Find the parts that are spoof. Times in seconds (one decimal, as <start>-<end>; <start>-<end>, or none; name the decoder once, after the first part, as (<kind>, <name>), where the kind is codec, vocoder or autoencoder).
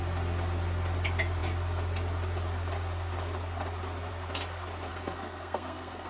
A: 4.9-6.1 (codec, SNAC)